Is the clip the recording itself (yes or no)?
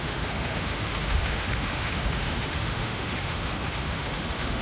no